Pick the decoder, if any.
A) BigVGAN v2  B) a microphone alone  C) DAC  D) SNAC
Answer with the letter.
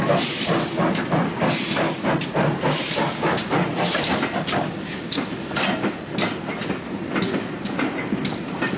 B